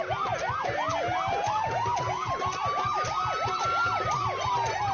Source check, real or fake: real